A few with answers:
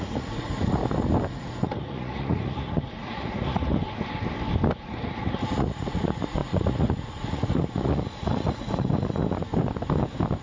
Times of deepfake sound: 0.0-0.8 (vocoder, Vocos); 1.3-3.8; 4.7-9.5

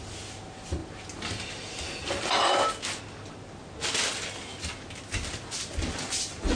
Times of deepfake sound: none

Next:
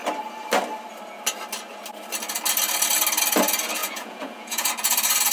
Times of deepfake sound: 3.8-4.7 (vocoder, Vocos)